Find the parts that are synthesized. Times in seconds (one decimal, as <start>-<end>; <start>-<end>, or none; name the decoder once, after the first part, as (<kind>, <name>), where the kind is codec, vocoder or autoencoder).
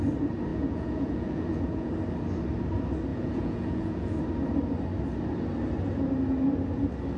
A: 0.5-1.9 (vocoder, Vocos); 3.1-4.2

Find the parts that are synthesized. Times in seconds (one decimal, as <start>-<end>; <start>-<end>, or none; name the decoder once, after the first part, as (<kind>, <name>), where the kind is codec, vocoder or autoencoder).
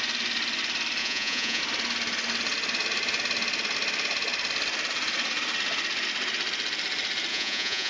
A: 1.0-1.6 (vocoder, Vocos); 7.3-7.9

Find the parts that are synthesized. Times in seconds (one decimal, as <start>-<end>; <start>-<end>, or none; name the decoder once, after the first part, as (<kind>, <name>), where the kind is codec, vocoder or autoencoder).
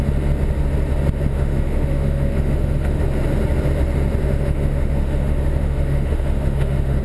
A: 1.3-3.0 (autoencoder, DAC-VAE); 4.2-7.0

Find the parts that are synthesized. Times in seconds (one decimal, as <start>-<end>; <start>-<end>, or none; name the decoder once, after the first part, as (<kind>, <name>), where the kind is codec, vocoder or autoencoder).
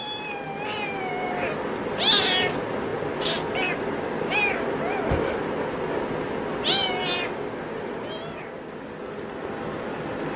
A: none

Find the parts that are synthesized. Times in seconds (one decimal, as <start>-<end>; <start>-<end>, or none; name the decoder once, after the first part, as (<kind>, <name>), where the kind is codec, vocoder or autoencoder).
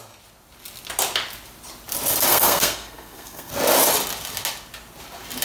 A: 2.3-3.5 (codec, SNAC)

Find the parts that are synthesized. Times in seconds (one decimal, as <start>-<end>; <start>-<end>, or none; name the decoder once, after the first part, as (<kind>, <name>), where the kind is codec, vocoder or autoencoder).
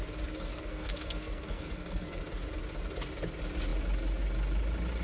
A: 0.5-2.2 (codec, SNAC)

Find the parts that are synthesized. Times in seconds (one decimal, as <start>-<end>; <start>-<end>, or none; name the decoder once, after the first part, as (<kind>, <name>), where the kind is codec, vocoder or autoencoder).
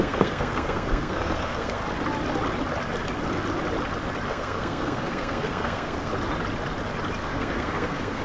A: 0.0-1.8 (codec, SNAC); 4.3-6.1; 7.2-8.2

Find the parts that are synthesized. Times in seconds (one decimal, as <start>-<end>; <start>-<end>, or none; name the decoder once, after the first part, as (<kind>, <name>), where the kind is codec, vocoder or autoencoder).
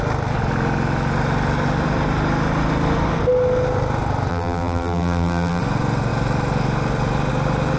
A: 4.3-5.6 (vocoder, BigVGAN v2)